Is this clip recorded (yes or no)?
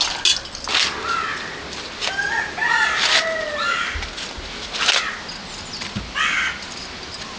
yes